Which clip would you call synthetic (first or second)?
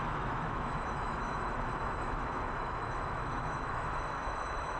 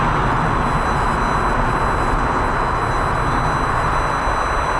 first